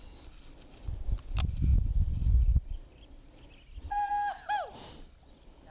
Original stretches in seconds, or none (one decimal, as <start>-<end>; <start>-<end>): 0.0-5.7

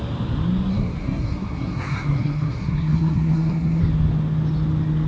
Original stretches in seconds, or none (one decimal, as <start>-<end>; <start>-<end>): 0.0-0.7; 3.8-5.1

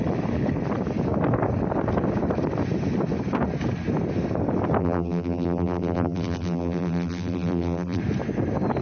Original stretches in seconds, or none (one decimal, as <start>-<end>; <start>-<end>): 0.0-4.8; 8.0-8.8

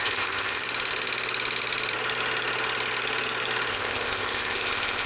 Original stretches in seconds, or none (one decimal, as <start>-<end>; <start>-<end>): 0.6-3.7

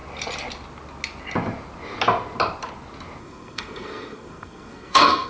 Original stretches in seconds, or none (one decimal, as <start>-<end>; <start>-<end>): 0.0-3.2